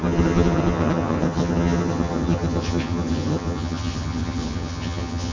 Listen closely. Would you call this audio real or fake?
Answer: fake